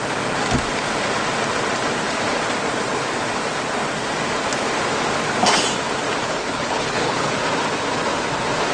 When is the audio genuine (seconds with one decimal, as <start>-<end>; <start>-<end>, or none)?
0.0-6.2; 7.3-8.7